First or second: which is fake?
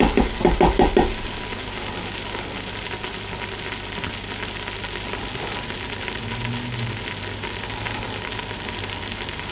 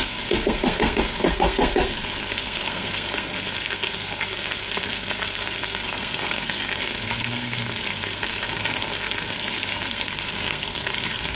second